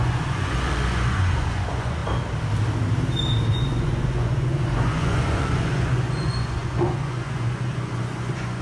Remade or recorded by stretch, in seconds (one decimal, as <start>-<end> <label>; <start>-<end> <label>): 0.0-2.0 remade; 2.0-3.5 recorded; 3.5-8.6 remade

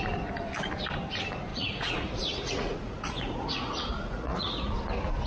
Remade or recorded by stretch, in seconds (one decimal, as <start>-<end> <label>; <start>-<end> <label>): 0.0-1.5 recorded; 1.5-4.7 remade; 4.7-5.3 recorded

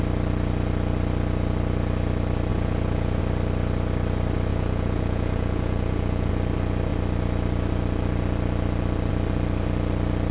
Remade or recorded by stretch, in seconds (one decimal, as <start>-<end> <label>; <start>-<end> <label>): 0.0-2.5 recorded; 2.5-3.2 remade; 3.2-4.5 recorded; 4.5-6.3 remade; 6.3-10.3 recorded

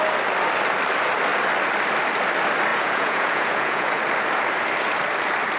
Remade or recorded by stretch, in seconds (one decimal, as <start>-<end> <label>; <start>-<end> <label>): 0.0-2.7 recorded; 2.7-4.0 remade; 4.0-5.6 recorded

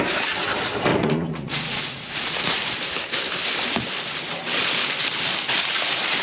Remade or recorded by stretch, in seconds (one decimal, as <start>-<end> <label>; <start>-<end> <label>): 0.0-0.9 recorded; 0.9-2.3 remade; 2.3-6.2 recorded